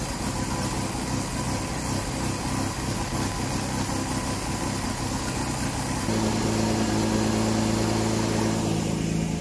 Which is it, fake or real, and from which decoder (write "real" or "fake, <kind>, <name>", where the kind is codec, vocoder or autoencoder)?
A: real